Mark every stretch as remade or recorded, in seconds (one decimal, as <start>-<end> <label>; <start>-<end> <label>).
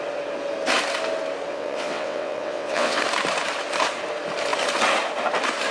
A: 0.0-1.5 recorded; 1.5-3.0 remade; 3.0-5.7 recorded